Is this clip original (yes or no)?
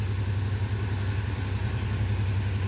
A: yes